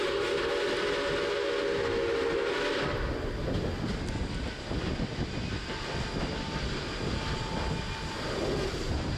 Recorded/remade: recorded